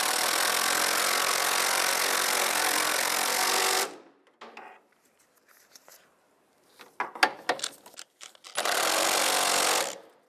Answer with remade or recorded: recorded